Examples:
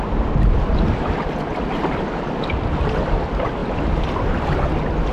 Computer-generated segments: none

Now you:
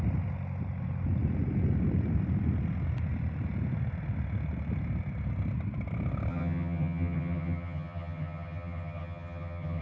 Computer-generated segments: 6.3-9.8

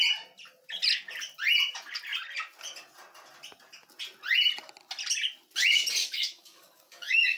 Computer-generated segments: 6.0-7.4

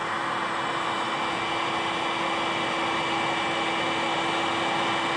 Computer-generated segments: none

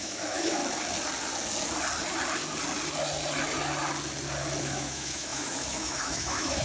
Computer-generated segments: 0.0-0.6; 4.6-6.6